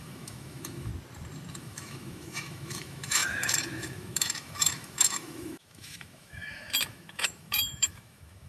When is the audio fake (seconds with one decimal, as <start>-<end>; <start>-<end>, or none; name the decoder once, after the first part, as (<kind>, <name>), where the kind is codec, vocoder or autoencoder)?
0.0-0.9 (autoencoder, DAC-VAE); 1.5-8.5